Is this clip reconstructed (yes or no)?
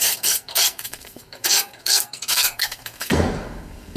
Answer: yes